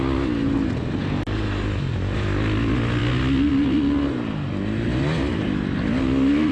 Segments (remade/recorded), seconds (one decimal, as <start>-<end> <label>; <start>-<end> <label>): 0.0-6.5 recorded